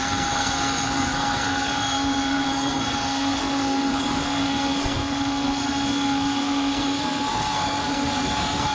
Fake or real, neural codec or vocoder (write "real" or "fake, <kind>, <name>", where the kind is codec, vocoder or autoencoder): fake, codec, SNAC